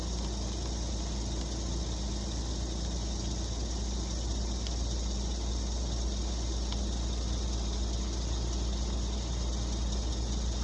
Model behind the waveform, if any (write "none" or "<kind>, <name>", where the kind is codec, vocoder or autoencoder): none